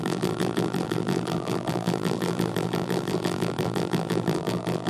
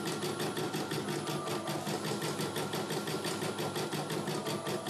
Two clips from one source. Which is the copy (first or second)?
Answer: first